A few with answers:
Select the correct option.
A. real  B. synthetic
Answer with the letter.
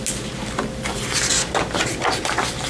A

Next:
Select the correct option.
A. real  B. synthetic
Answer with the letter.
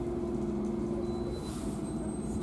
A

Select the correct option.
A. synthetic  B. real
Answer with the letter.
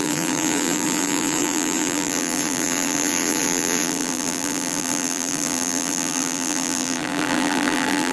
A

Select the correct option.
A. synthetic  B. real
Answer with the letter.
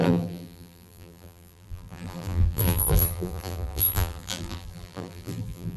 A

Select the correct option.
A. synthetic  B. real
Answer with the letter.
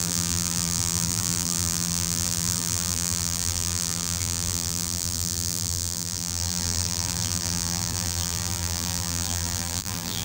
A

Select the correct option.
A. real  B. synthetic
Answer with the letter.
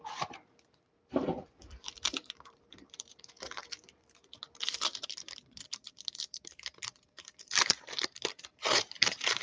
B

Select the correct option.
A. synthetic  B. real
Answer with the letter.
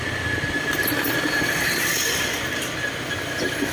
B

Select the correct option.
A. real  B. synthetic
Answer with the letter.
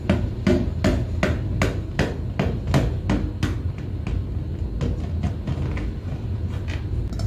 A